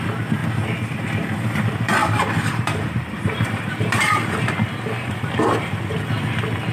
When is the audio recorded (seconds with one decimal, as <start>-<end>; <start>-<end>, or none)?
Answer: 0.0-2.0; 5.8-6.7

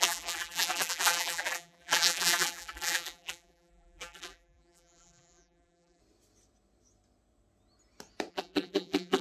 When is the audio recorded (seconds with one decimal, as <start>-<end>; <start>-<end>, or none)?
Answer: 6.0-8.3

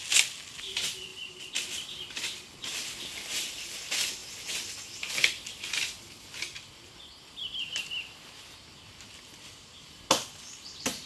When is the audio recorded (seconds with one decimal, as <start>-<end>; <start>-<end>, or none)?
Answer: 0.0-1.1; 3.5-4.2; 5.1-11.1